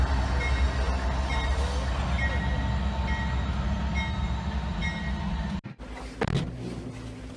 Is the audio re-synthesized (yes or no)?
no